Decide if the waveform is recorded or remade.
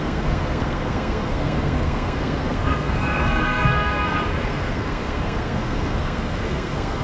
remade